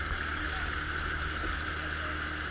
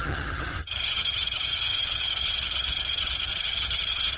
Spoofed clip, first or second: second